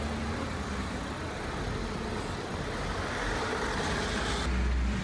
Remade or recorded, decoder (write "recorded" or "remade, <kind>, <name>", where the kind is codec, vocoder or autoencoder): recorded